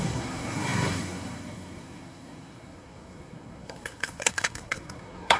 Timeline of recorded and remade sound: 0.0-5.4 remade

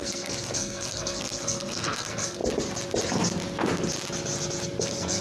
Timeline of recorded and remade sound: 0.0-2.4 remade; 2.4-4.8 recorded; 4.8-5.2 remade

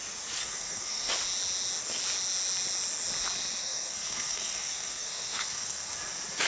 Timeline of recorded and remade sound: 0.0-0.4 recorded; 0.4-1.1 remade; 1.1-3.6 recorded; 3.6-5.9 remade; 5.9-6.5 recorded

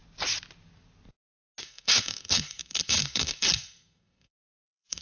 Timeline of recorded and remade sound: 0.0-1.6 recorded; 1.6-5.0 remade

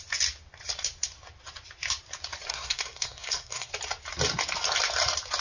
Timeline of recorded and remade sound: 0.0-2.5 recorded; 2.5-3.7 remade; 3.7-5.4 recorded